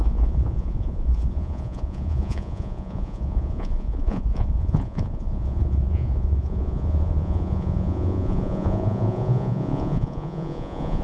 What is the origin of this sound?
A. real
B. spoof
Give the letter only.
B